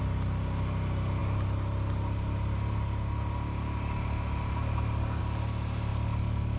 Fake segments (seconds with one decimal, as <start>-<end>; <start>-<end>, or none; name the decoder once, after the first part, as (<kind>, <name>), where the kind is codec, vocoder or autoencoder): none